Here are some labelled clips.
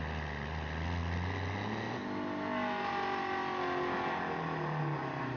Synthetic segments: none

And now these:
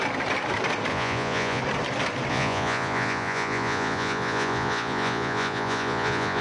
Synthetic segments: 0.9-1.6 (vocoder, Vocos); 2.3-6.4

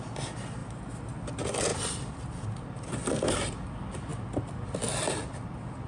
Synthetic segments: 0.6-1.1 (vocoder, BigVGAN v2)

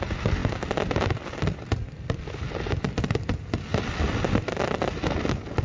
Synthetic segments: none

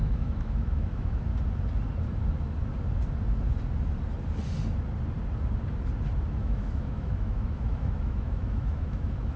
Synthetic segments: 0.0-1.3 (autoencoder, DAC-VAE); 6.3-9.4

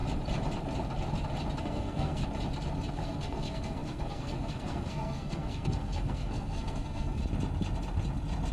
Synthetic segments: 1.6-2.2 (codec, SNAC); 2.9-7.2

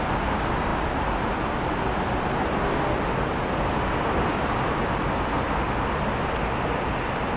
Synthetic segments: none

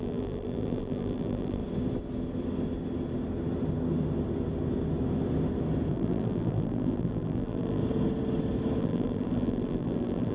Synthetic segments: 0.0-1.6 (vocoder, BigVGAN v2); 5.9-7.8; 8.8-10.3